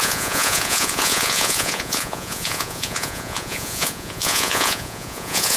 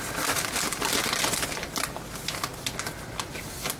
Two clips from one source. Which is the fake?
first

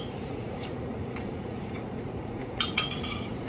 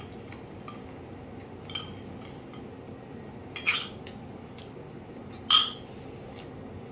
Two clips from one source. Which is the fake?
first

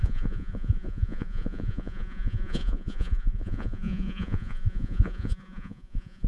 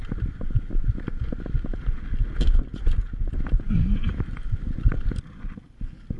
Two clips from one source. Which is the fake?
first